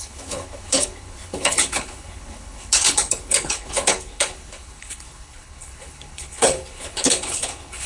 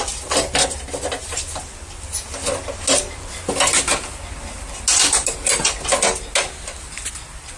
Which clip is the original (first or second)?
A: second